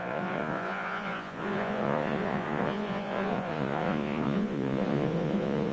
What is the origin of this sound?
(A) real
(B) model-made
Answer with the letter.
B